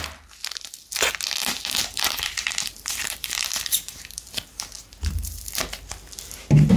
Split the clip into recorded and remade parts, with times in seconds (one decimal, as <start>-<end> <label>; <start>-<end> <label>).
0.0-1.4 recorded; 1.4-5.5 remade; 5.5-6.8 recorded